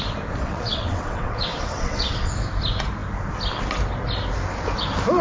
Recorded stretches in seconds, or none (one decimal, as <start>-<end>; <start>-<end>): 0.0-0.4; 2.3-5.2